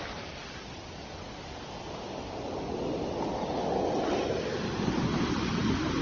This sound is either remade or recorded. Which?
remade